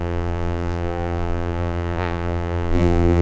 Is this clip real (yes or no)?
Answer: no